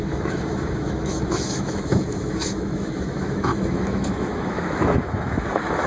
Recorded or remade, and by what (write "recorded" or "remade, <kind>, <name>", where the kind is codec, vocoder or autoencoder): remade, autoencoder, DAC-VAE